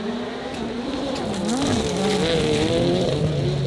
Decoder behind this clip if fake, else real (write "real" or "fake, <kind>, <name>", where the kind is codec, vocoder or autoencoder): real